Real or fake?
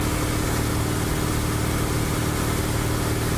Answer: real